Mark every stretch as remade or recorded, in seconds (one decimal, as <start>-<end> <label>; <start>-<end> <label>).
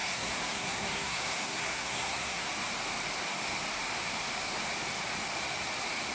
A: 0.0-2.5 remade; 2.5-6.1 recorded